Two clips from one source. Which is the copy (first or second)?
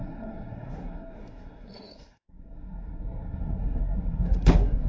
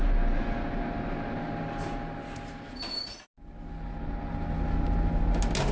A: first